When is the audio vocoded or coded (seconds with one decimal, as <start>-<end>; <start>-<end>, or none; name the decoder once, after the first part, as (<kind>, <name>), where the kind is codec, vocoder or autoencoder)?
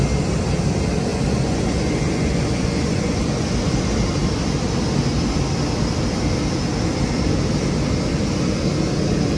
1.1-3.8 (vocoder, Vocos)